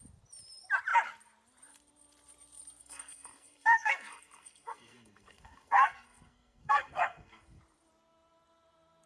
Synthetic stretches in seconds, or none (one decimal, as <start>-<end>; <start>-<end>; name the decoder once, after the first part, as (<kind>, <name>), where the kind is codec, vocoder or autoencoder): 2.8-7.6 (codec, SNAC)